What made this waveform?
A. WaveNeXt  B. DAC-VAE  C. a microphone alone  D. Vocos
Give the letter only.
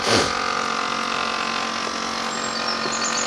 C